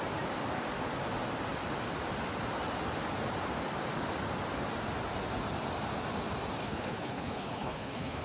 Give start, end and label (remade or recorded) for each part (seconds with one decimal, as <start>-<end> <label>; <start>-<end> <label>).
0.0-6.6 recorded; 6.6-8.2 remade